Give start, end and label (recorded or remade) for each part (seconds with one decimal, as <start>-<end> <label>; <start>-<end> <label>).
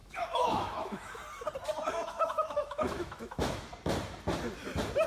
0.0-1.2 remade; 1.2-1.9 recorded; 1.9-3.7 remade; 3.7-5.1 recorded